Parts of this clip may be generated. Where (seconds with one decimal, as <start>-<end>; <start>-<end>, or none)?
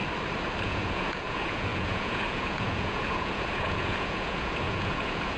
0.6-5.4